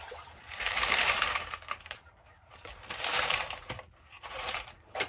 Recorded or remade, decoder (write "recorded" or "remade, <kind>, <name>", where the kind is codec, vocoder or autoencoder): remade, vocoder, BigVGAN v2